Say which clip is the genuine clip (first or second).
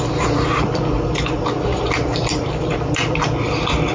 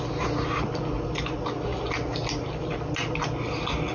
second